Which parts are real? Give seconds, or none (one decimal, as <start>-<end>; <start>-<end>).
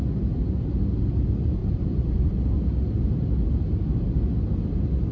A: 0.0-1.6; 2.5-5.1